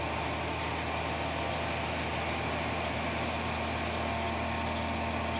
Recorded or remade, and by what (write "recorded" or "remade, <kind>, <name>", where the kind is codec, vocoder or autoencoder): recorded